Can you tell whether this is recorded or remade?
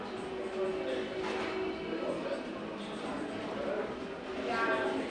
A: recorded